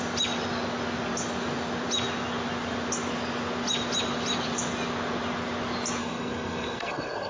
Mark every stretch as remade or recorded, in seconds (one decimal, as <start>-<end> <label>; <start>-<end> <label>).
0.0-6.0 recorded; 6.0-7.3 remade